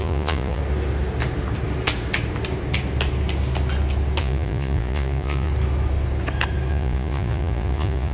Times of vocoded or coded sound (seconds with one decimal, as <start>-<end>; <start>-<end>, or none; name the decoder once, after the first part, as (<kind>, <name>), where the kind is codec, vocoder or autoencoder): 0.0-0.6 (vocoder, Vocos); 4.2-5.5; 6.7-8.1